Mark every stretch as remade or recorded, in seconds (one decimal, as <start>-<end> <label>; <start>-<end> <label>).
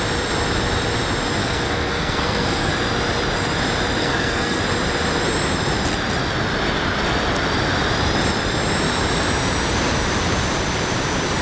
0.0-1.4 recorded; 1.4-2.7 remade; 2.7-4.0 recorded; 4.0-4.6 remade; 4.6-11.4 recorded